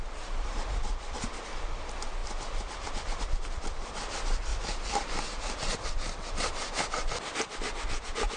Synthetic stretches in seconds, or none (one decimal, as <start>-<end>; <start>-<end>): 2.2-3.5; 4.5-5.2

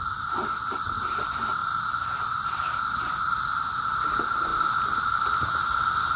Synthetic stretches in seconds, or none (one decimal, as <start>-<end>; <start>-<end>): 1.6-3.8

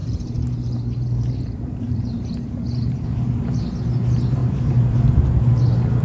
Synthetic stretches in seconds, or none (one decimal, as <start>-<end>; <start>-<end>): 0.0-3.6; 4.4-4.9

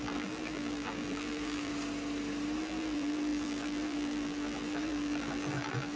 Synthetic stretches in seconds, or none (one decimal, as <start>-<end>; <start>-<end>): 0.0-1.7; 2.6-6.0

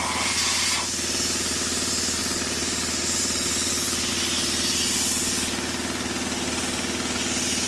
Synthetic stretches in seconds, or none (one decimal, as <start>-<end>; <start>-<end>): none

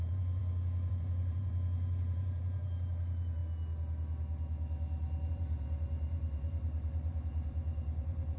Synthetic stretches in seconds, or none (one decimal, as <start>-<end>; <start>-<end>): 0.0-0.4; 0.9-3.4; 5.3-8.4